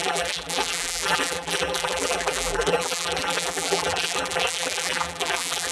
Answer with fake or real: fake